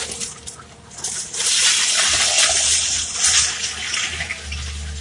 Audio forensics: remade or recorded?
recorded